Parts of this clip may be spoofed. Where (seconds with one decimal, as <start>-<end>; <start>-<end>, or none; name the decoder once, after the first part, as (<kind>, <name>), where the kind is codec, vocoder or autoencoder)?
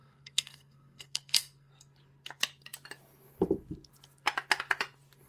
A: 0.0-1.7 (codec, SNAC)